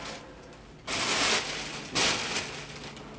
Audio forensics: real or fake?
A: real